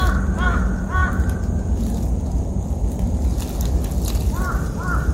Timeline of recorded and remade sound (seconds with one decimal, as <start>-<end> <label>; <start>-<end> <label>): 0.0-5.1 recorded

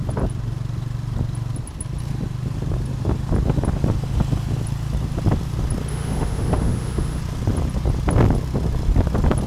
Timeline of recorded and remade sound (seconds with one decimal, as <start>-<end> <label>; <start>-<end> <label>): 0.0-5.9 recorded; 5.9-7.2 remade; 7.2-9.5 recorded

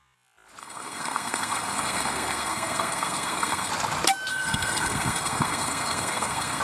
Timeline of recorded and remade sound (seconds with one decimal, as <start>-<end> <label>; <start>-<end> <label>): 0.0-0.6 recorded; 0.6-3.7 remade; 3.7-4.3 recorded; 4.3-6.6 remade

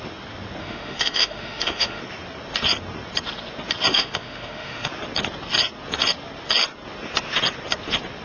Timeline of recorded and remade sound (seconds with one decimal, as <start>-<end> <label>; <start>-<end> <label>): 0.0-0.6 recorded; 0.6-2.0 remade; 2.0-3.9 recorded; 3.9-4.9 remade; 4.9-8.2 recorded